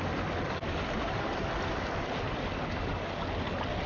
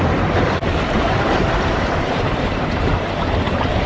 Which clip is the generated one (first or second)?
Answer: second